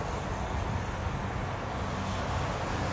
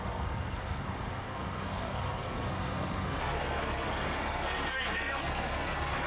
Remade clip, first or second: second